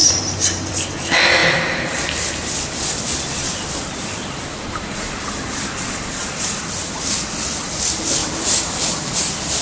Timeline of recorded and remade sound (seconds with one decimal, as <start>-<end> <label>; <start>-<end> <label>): 0.0-0.7 remade; 0.7-9.6 recorded